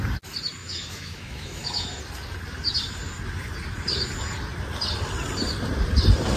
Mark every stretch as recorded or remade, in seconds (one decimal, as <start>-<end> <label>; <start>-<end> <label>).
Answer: 0.0-0.6 recorded; 0.6-2.0 remade; 2.0-6.4 recorded